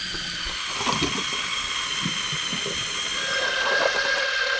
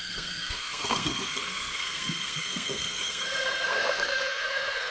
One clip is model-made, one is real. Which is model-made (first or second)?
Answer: second